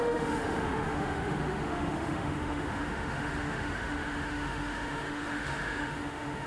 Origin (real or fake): fake